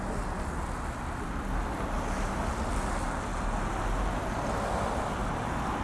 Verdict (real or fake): real